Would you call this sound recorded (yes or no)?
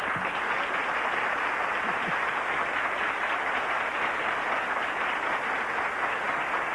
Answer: yes